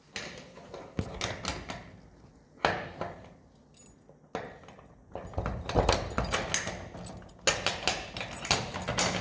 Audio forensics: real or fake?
real